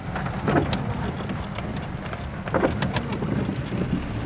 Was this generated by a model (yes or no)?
no